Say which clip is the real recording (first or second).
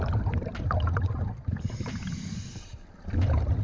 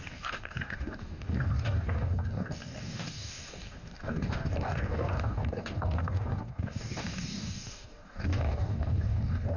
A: first